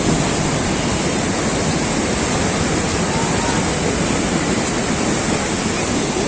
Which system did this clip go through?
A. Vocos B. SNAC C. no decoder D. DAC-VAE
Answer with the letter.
C